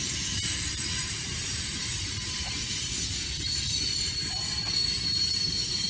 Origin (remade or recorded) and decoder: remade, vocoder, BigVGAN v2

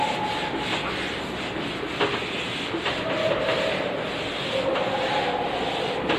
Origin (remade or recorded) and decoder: recorded